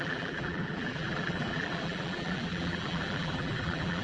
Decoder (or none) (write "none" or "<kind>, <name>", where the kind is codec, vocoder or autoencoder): vocoder, BigVGAN v2